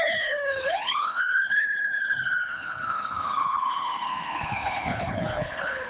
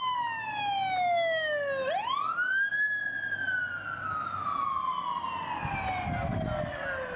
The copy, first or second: first